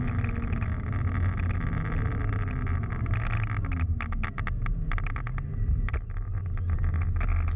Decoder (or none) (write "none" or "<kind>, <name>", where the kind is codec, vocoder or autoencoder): none